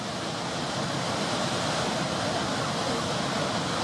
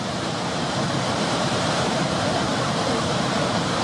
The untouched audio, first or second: first